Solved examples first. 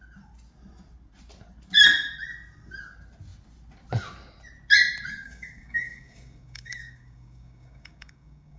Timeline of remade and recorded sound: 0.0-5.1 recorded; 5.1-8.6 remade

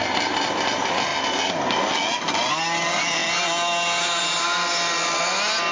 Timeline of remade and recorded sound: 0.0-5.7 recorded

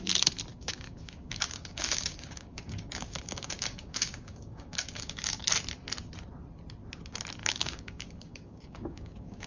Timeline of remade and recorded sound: 0.0-0.5 recorded; 0.5-5.4 remade; 5.4-7.4 recorded; 7.4-9.5 remade

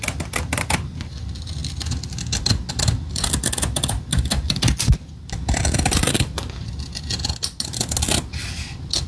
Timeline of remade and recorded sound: 0.0-9.1 recorded